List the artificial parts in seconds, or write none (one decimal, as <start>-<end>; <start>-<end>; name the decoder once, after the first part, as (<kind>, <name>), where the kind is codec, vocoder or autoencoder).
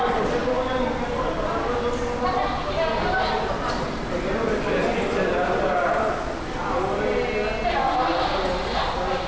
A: none